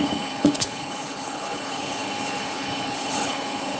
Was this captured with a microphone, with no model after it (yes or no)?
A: no